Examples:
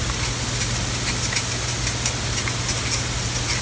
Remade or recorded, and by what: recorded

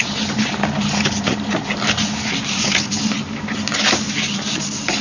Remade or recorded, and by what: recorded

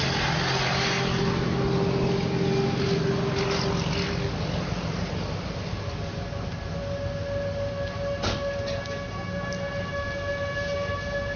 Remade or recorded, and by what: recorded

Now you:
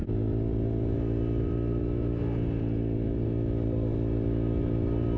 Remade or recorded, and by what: recorded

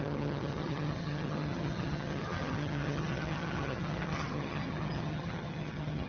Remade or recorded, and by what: remade, vocoder, HiFi-GAN